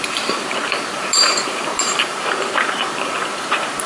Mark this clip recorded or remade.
remade